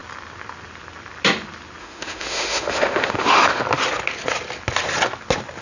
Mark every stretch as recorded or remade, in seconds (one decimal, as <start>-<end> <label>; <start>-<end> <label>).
0.0-1.8 recorded; 1.8-3.6 remade; 3.6-5.6 recorded